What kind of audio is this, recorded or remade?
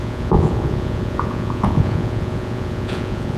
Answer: remade